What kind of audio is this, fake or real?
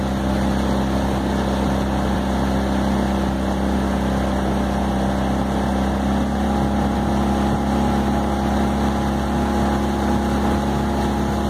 real